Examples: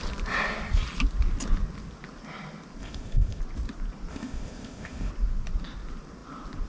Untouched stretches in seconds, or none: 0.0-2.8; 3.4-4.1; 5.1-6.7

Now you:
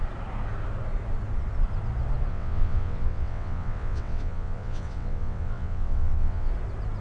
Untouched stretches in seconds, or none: 0.0-2.3; 6.5-7.0

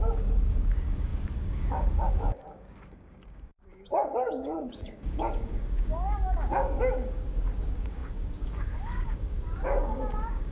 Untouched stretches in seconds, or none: none

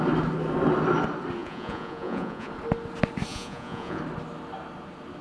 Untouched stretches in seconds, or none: 0.0-1.4; 2.5-3.3; 4.0-5.2